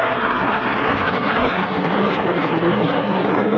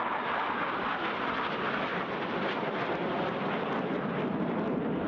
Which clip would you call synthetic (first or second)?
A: first